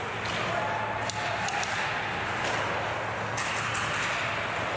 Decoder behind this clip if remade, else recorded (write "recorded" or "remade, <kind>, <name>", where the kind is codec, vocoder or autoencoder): recorded